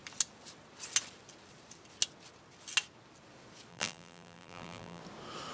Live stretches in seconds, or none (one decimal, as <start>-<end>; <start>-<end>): 0.0-3.7; 5.0-5.5